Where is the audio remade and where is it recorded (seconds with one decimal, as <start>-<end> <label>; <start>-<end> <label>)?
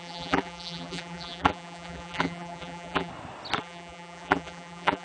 0.0-3.1 remade; 3.1-3.6 recorded; 3.6-5.0 remade